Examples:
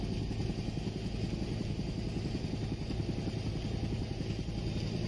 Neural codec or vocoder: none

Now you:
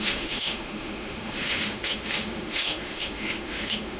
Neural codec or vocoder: autoencoder, DAC-VAE